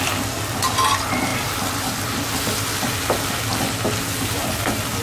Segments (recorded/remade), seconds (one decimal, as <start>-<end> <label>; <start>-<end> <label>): 0.0-5.0 recorded

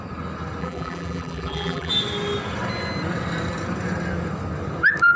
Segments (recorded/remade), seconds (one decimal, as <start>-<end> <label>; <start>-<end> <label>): 0.0-0.6 recorded; 0.6-1.9 remade; 1.9-5.2 recorded